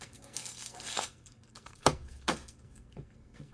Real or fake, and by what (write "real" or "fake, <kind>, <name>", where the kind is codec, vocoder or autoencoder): fake, codec, SNAC